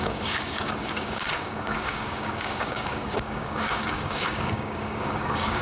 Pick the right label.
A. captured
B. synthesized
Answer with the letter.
B